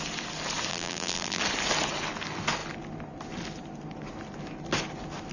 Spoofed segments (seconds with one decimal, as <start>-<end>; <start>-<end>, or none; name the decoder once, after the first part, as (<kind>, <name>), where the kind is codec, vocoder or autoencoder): 0.7-1.4 (vocoder, BigVGAN v2)